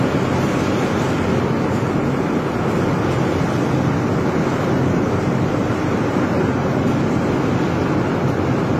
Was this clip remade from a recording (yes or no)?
no